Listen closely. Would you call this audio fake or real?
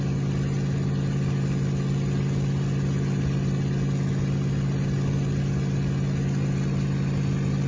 real